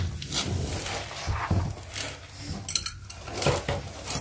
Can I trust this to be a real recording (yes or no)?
yes